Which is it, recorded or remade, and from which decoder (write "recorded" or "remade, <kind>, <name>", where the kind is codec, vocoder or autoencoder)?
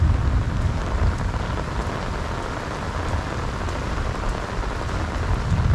recorded